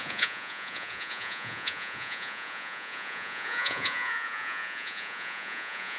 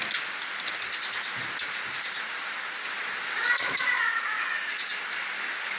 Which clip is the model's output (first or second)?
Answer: first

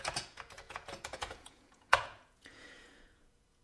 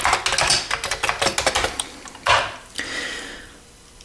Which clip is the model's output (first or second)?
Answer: first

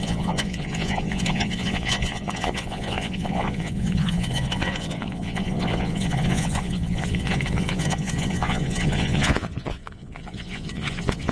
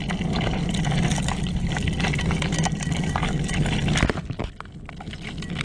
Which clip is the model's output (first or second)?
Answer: first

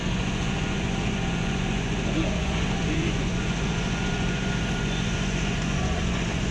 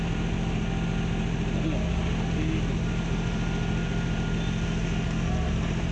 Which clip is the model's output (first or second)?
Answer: first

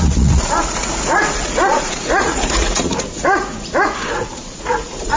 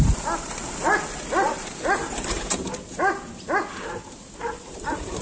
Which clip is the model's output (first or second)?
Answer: first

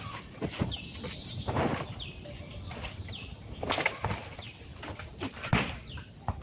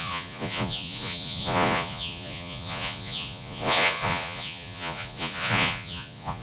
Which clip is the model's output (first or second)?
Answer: second